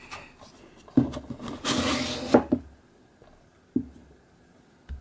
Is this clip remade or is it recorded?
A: recorded